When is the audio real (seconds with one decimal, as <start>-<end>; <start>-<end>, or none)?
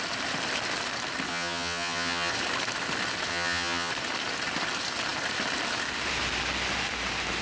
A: 0.0-1.3; 2.3-3.3; 3.9-7.4